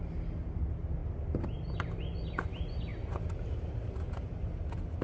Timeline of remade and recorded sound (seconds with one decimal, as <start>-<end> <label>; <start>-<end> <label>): 0.0-5.0 recorded

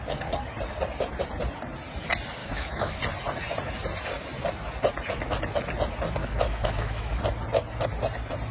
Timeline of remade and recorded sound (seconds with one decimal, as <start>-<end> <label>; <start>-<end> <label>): 0.0-2.4 recorded; 2.4-3.0 remade; 3.0-6.2 recorded; 6.2-7.2 remade; 7.2-8.5 recorded

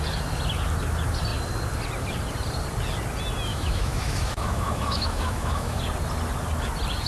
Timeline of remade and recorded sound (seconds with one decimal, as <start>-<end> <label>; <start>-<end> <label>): 0.0-3.5 recorded; 3.5-5.8 remade; 5.8-7.1 recorded

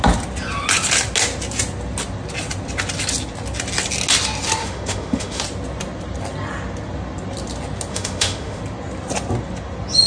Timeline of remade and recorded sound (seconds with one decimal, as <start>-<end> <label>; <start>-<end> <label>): 0.0-4.6 recorded; 4.6-5.4 remade; 5.4-7.9 recorded; 7.9-8.6 remade; 8.6-10.1 recorded

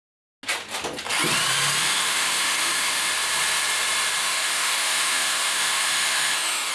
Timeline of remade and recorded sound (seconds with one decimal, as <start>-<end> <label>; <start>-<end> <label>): 0.0-1.8 recorded; 1.8-3.1 remade; 3.1-4.2 recorded; 4.2-6.7 remade

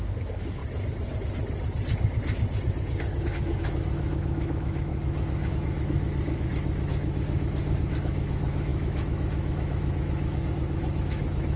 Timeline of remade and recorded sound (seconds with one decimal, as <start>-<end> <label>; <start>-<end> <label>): 0.0-0.6 remade; 0.6-3.2 recorded; 3.2-11.6 remade

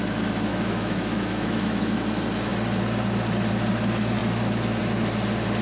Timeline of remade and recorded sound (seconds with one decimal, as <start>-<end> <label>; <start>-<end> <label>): 0.0-0.5 recorded; 0.5-2.0 remade; 2.0-5.6 recorded

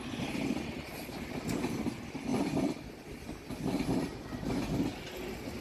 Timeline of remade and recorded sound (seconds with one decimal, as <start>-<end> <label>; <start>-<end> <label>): 0.0-5.6 recorded